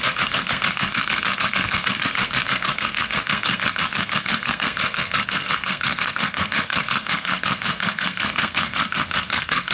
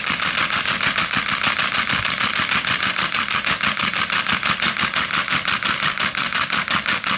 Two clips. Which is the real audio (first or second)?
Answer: second